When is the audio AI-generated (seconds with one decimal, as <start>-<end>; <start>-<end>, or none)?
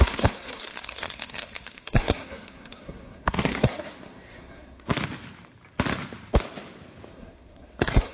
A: 0.0-4.9; 7.1-8.1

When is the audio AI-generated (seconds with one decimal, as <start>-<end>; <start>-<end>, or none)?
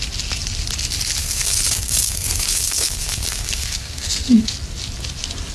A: 1.2-4.5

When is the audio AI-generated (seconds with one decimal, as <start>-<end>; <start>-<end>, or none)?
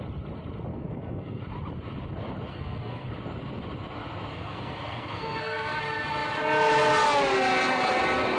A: 0.7-1.4; 2.5-3.1; 4.3-5.8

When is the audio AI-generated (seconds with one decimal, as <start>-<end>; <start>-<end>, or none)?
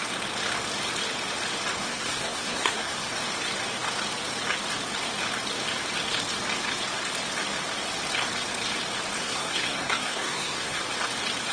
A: 1.8-3.1; 9.2-10.8